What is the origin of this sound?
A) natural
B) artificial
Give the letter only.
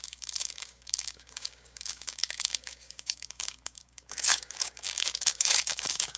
B